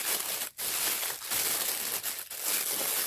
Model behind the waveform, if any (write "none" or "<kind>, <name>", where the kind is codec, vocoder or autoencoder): none